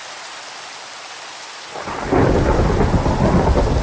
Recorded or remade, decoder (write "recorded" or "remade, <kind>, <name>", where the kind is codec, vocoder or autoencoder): recorded